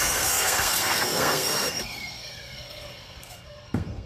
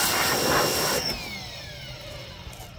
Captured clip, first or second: second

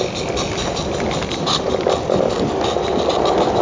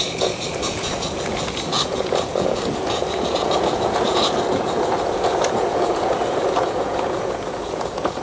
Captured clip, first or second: first